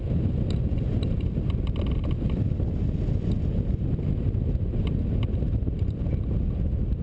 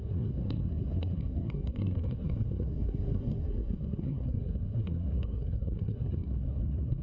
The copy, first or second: second